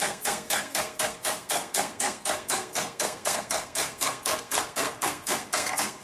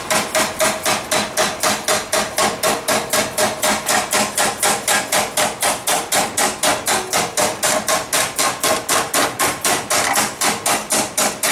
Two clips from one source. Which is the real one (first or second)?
second